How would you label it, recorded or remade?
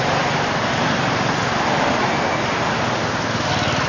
recorded